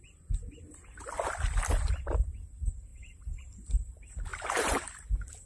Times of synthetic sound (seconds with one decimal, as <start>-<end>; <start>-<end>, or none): 2.9-3.4; 4.3-4.8